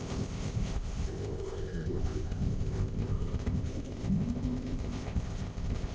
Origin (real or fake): fake